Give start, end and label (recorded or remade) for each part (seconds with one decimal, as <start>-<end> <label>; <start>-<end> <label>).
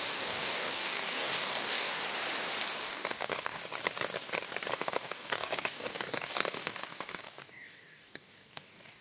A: 0.0-2.0 remade; 2.0-2.8 recorded; 2.8-3.6 remade; 3.6-4.7 recorded; 4.7-9.0 remade